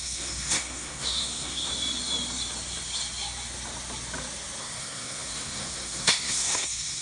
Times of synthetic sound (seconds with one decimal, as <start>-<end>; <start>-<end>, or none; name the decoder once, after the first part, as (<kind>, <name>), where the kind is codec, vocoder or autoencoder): 0.0-1.7 (codec, SNAC); 4.6-7.0